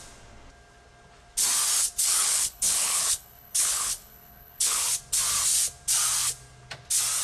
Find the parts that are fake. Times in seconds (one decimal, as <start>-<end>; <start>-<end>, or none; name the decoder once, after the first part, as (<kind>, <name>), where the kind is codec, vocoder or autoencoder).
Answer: 2.1-4.8 (codec, HILCodec)